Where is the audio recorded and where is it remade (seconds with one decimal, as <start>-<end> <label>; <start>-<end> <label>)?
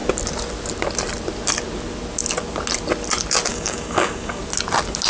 0.0-3.5 recorded; 3.5-4.4 remade; 4.4-5.1 recorded